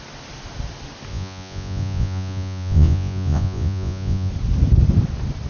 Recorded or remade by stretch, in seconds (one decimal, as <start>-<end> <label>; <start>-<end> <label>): 0.0-1.1 recorded; 1.1-4.3 remade; 4.3-5.5 recorded